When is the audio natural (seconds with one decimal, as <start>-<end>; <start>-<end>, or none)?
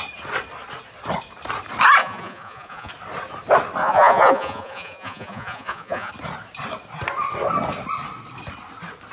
0.0-2.0; 2.9-3.8; 6.1-9.1